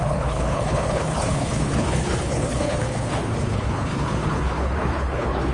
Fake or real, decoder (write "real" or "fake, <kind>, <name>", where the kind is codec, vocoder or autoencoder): fake, codec, HILCodec